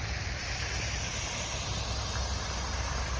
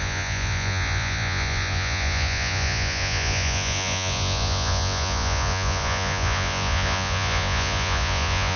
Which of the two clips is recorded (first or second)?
first